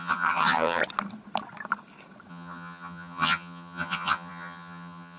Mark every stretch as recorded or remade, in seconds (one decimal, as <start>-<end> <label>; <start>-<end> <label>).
0.0-0.8 remade; 0.8-2.3 recorded; 2.3-5.2 remade